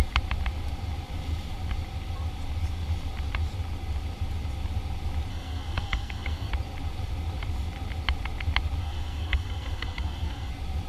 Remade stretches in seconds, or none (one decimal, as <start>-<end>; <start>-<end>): 5.3-6.5; 8.8-10.5